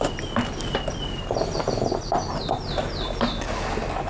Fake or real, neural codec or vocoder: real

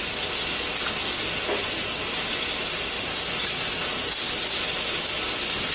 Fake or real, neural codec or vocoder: real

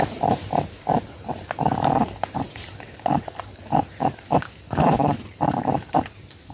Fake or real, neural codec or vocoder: fake, vocoder, BigVGAN v2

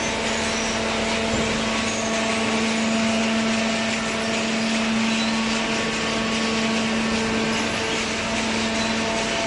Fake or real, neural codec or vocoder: real